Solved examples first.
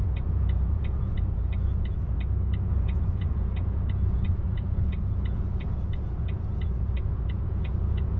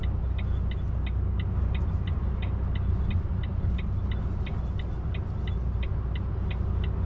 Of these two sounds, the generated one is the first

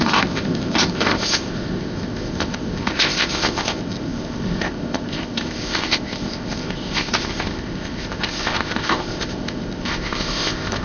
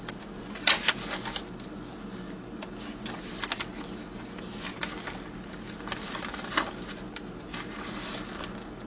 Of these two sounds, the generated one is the first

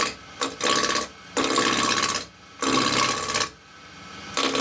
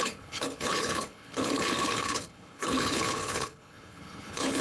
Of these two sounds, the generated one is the second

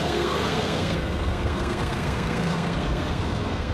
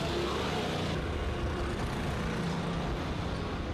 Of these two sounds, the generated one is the first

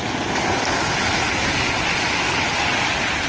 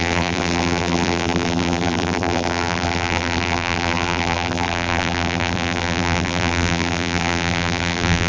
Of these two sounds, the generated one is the second